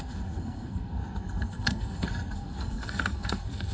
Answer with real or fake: fake